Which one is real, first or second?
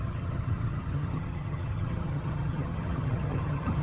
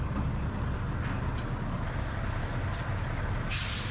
second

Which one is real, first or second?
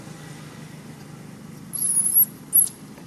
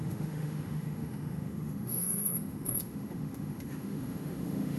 first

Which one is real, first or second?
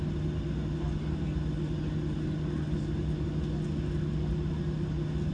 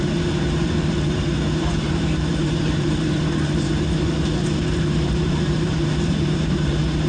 first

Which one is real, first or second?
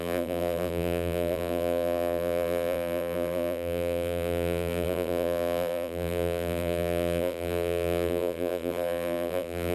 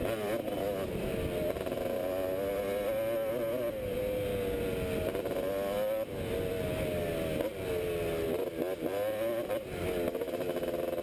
second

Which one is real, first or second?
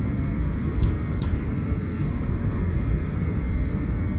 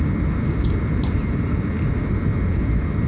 second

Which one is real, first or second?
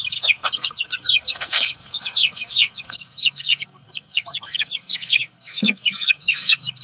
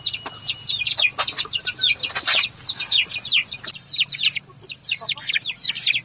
second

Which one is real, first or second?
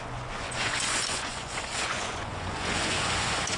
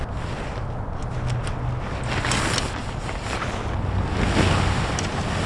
second